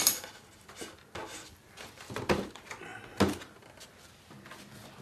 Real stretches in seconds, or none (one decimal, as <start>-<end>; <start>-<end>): 0.0-1.5; 2.1-5.0